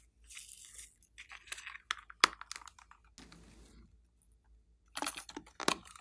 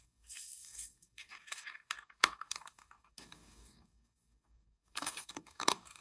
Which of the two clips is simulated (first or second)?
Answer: second